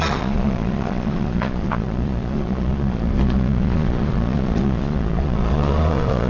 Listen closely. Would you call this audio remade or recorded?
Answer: remade